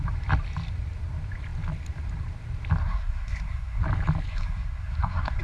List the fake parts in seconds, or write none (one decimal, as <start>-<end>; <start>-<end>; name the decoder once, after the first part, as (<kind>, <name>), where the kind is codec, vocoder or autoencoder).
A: 2.8-3.8 (codec, SNAC); 4.3-5.4